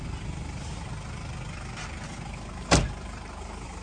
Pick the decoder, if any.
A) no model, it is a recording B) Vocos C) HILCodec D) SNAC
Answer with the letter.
A